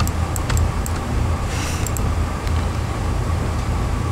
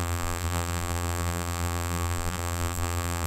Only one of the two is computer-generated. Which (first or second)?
second